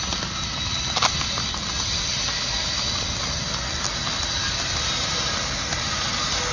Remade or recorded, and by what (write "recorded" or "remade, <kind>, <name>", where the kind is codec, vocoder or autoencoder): recorded